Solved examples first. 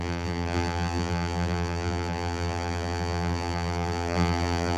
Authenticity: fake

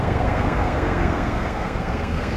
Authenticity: fake